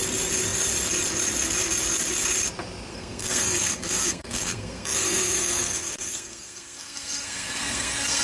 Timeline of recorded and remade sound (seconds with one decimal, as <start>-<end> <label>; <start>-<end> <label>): 0.0-2.9 recorded; 2.9-8.2 remade